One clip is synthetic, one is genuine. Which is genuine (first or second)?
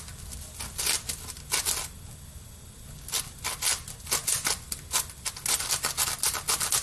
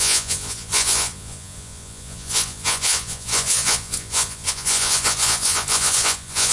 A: first